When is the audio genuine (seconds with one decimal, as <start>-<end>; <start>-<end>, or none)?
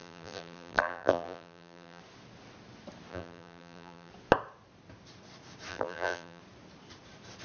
2.0-3.1; 4.1-5.7; 6.4-7.4